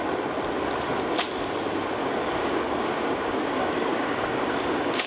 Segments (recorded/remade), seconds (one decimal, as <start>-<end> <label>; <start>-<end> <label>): 0.0-2.0 recorded; 2.0-2.6 remade; 2.6-3.6 recorded; 3.6-5.1 remade